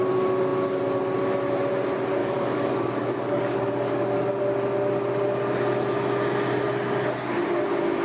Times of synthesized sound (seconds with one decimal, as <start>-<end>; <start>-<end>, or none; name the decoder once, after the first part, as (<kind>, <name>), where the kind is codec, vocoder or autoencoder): 2.2-4.4 (codec, DAC)